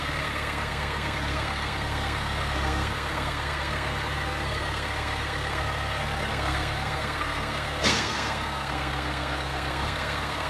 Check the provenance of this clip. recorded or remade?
remade